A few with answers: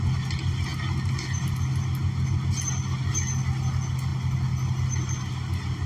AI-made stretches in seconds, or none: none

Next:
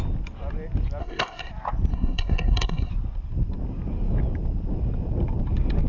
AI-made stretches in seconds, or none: 1.0-1.5 (codec, SNAC); 1.9-2.9

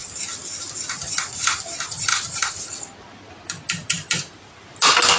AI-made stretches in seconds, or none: 1.0-1.6 (vocoder, BigVGAN v2); 2.1-2.7